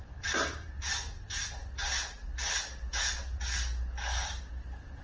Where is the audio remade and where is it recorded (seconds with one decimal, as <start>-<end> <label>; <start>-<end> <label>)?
0.0-5.0 recorded